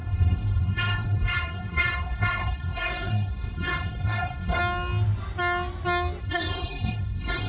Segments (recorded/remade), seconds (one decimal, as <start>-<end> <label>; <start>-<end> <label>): 0.0-4.6 remade; 4.6-6.2 recorded; 6.2-7.5 remade